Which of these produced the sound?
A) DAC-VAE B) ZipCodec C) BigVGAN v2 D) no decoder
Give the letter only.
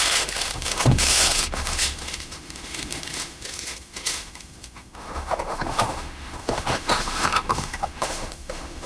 A